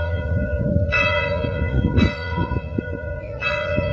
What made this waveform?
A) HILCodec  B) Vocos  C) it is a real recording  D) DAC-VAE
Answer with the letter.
B